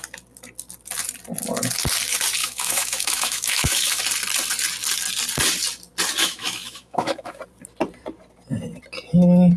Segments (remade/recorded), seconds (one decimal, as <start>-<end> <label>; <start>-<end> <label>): 0.0-2.4 recorded; 2.4-4.0 remade; 4.0-6.2 recorded; 6.2-7.4 remade; 7.4-9.6 recorded